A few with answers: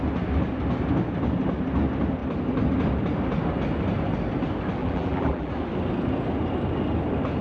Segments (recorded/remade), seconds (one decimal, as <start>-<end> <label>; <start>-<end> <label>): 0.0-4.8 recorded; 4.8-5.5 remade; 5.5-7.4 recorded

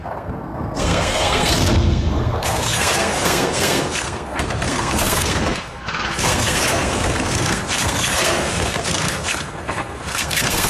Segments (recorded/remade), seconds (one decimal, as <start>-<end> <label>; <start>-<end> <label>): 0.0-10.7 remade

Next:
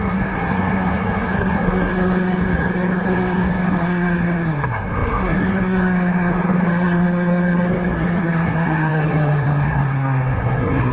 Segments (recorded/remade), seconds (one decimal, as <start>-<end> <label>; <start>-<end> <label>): 0.0-10.9 remade

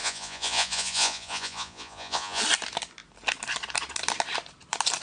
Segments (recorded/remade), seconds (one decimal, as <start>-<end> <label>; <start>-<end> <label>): 0.0-2.4 remade; 2.4-5.0 recorded

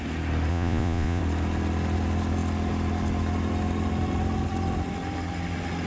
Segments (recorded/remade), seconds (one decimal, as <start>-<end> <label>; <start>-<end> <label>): 0.0-0.5 recorded; 0.5-1.2 remade; 1.2-5.9 recorded